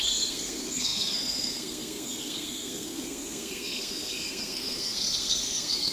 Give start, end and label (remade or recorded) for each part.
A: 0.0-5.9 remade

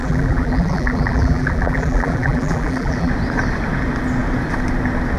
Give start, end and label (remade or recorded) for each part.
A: 0.0-3.1 remade; 3.1-5.2 recorded